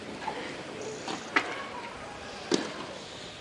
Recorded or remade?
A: recorded